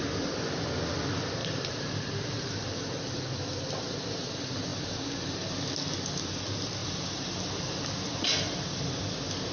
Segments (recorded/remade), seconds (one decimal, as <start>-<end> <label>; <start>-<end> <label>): 0.0-1.4 recorded; 1.4-3.2 remade; 3.2-6.8 recorded; 6.8-7.5 remade; 7.5-9.5 recorded